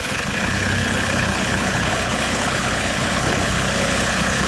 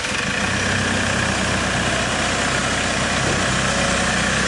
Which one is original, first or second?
second